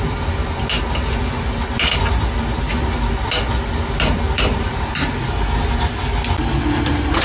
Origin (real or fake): real